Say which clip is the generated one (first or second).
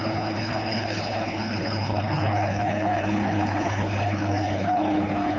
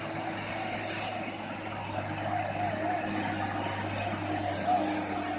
first